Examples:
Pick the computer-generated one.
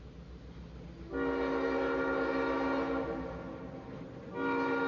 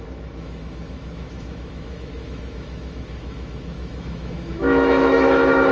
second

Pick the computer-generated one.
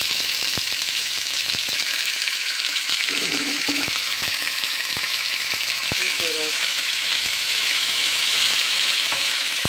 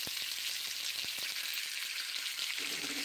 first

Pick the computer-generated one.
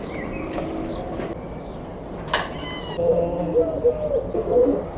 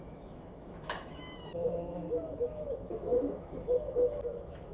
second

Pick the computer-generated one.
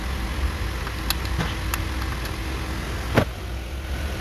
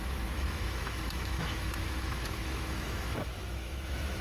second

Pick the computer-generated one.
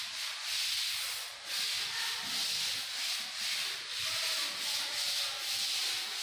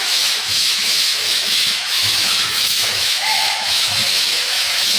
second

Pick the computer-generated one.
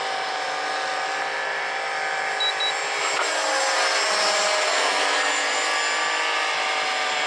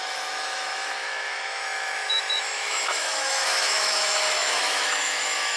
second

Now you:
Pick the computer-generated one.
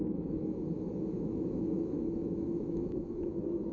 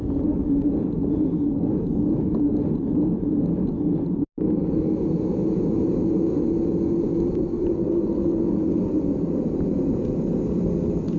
first